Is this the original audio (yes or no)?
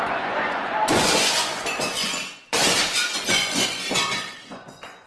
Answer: no